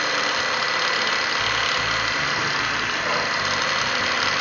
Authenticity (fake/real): real